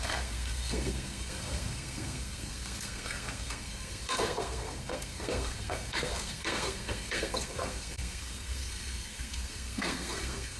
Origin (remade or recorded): remade